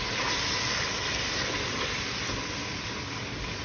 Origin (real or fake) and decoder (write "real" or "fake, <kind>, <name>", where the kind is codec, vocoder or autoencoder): real